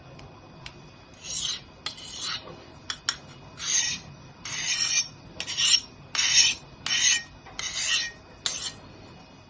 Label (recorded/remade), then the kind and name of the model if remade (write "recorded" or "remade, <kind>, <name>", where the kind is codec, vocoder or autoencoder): recorded